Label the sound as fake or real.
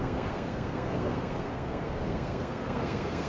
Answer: fake